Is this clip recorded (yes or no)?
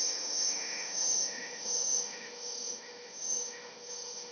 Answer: no